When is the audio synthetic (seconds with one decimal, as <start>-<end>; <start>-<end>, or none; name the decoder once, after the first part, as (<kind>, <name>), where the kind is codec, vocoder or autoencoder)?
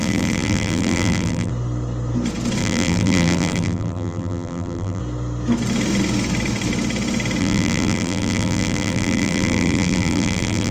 0.0-1.5 (vocoder, BigVGAN v2); 2.6-5.0; 7.4-10.7